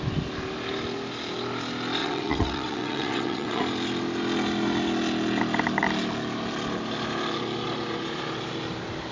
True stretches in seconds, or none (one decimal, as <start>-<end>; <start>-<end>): 0.0-2.0; 3.6-9.1